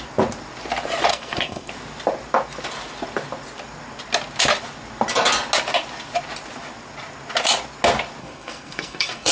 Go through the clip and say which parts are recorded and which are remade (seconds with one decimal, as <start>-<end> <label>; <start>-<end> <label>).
0.0-1.1 recorded; 1.1-1.7 remade; 1.7-8.2 recorded; 8.2-9.3 remade